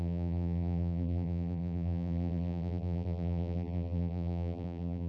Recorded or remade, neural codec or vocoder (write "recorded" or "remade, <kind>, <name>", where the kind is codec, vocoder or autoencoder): remade, vocoder, BigVGAN v2